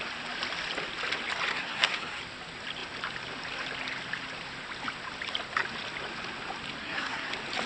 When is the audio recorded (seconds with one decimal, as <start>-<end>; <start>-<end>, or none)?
0.0-1.5; 2.2-6.8; 7.3-7.7